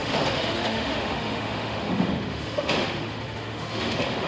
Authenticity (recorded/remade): remade